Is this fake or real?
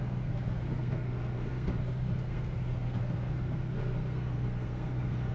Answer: fake